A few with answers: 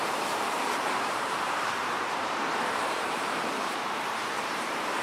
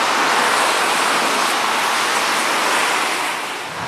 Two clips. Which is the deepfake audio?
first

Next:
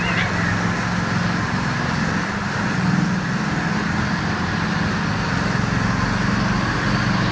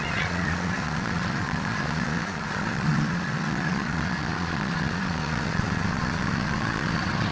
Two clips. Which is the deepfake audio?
second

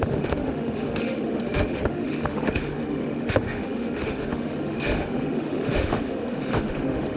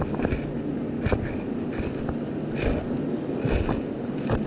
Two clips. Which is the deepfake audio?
first